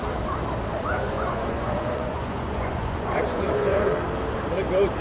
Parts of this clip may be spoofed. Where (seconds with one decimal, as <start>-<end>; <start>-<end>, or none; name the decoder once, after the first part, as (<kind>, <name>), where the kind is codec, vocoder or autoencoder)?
0.9-3.9 (vocoder, Vocos)